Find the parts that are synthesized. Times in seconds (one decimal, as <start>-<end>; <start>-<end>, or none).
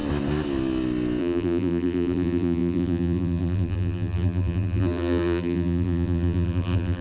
1.2-7.0